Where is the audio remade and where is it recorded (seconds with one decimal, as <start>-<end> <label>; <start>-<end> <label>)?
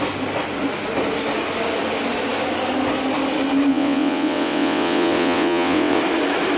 0.0-3.7 recorded; 3.7-6.0 remade; 6.0-6.6 recorded